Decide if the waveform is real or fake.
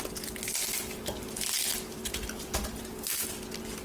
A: real